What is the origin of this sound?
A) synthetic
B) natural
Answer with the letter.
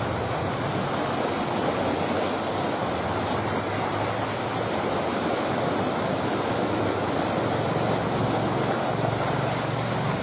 B